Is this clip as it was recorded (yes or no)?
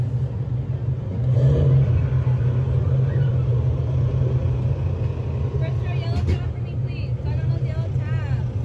yes